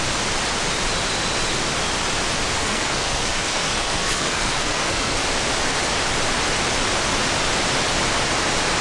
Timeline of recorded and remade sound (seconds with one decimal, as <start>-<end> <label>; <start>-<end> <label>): 0.0-2.6 recorded; 2.6-5.2 remade; 5.2-8.8 recorded